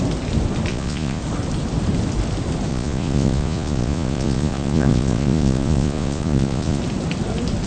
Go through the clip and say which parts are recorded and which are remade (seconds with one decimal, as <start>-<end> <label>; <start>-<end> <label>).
0.0-0.7 recorded; 0.7-1.2 remade; 1.2-2.7 recorded; 2.7-6.8 remade; 6.8-7.7 recorded